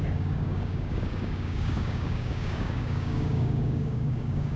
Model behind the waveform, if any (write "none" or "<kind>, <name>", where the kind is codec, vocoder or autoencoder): codec, DAC